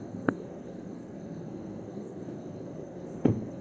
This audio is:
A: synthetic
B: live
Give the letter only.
A